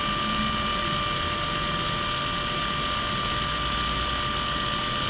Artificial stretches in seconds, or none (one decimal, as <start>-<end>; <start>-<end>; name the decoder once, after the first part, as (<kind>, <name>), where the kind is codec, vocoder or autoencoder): none